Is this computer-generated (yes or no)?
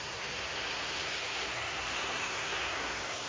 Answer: yes